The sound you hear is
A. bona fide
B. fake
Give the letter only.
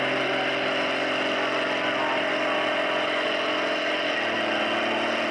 A